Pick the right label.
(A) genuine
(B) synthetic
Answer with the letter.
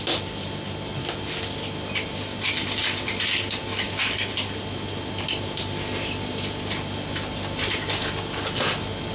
A